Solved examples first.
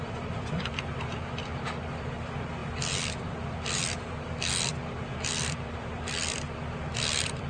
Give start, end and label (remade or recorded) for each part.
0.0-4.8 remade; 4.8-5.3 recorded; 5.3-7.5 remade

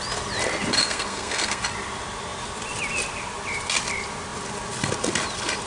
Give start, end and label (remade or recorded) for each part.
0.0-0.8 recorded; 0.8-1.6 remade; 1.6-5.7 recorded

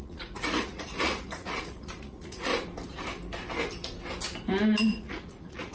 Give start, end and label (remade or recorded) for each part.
0.0-2.5 remade; 2.5-4.8 recorded; 4.8-5.7 remade